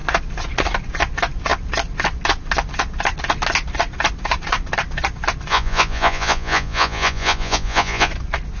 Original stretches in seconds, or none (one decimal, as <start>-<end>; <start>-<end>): 0.0-5.5; 8.1-8.6